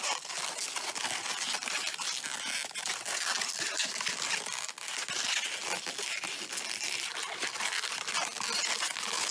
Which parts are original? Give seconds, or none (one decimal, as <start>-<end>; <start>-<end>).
0.0-9.3